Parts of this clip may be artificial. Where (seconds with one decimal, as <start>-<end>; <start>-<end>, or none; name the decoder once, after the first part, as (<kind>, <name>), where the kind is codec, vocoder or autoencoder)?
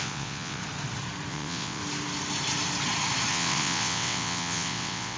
0.0-0.6 (vocoder, WaveNeXt); 1.3-1.8; 3.3-5.2